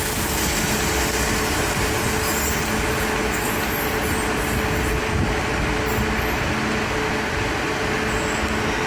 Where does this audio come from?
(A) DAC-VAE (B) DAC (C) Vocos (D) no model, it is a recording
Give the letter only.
D